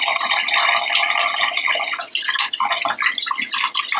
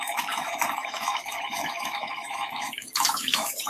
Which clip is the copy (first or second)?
second